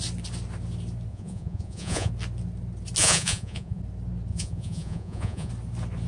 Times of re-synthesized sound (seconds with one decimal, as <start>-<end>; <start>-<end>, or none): 1.1-2.1; 3.0-3.8; 4.3-5.5